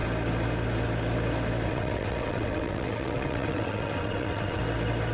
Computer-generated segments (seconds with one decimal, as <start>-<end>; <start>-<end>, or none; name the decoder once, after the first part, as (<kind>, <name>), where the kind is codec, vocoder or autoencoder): 1.7-4.6 (vocoder, WaveNeXt)